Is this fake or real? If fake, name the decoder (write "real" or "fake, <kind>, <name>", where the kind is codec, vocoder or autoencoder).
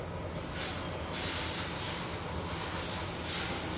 real